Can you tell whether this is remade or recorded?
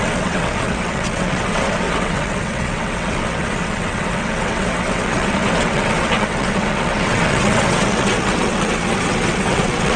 remade